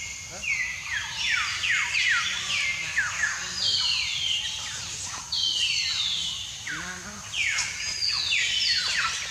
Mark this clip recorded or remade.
recorded